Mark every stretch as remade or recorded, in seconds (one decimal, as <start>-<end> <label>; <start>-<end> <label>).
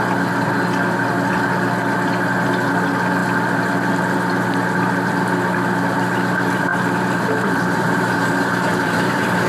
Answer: 0.0-6.7 recorded; 6.7-9.5 remade